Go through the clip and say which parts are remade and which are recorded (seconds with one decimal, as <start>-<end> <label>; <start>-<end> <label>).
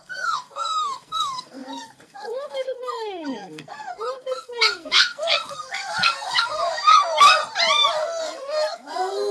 0.0-7.4 remade; 7.4-8.0 recorded; 8.0-9.3 remade